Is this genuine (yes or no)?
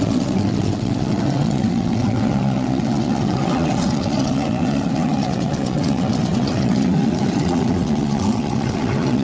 no